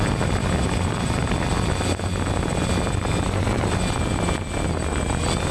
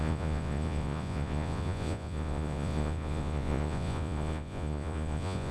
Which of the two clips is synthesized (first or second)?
second